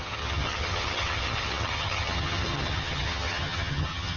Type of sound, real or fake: fake